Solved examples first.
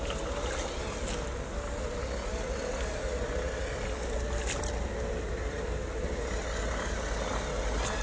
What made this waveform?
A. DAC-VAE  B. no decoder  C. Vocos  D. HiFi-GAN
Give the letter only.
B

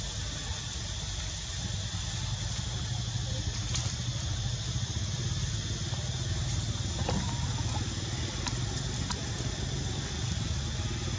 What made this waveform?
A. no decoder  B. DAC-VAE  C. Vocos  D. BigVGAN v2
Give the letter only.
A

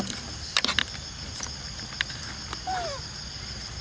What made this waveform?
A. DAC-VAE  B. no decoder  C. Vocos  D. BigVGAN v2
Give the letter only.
B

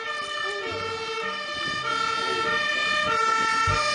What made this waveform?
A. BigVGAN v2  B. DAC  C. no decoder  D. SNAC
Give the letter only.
C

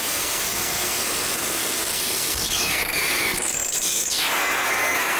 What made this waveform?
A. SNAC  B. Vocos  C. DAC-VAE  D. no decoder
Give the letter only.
A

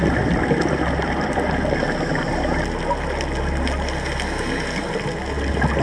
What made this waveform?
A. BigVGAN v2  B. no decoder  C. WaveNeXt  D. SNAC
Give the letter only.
B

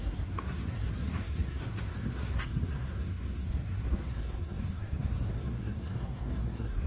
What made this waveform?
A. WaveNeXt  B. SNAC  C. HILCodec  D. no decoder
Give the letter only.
B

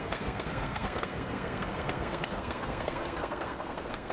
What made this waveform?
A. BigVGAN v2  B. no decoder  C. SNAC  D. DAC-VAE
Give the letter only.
C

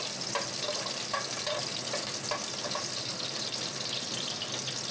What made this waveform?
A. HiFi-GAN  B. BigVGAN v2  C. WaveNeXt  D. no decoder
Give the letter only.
D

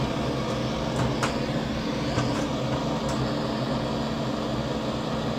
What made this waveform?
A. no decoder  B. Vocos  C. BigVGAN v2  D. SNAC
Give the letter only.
A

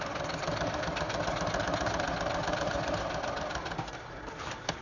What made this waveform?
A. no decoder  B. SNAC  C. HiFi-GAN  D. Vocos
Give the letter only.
A